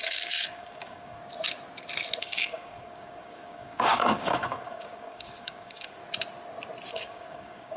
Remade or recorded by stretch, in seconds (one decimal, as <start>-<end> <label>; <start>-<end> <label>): 0.0-1.2 remade; 1.2-2.2 recorded; 2.2-6.0 remade; 6.0-6.9 recorded; 6.9-7.8 remade